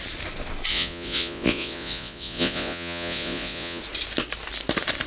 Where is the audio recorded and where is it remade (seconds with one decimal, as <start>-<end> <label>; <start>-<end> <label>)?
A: 0.0-0.7 recorded; 0.7-3.8 remade; 3.8-5.1 recorded